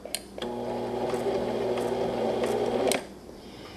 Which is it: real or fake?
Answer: real